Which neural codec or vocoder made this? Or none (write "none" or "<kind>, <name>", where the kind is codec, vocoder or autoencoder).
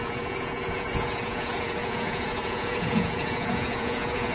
vocoder, Vocos